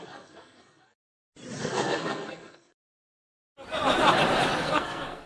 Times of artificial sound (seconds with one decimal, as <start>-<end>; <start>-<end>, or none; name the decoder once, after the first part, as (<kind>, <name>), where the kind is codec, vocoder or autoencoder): 0.0-1.1 (codec, SNAC); 1.6-3.3; 4.6-5.3